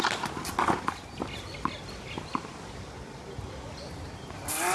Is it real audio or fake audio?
real